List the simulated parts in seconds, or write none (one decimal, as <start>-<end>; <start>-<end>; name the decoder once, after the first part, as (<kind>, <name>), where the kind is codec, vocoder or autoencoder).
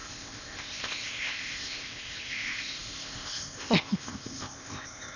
0.0-5.2 (codec, ZipCodec)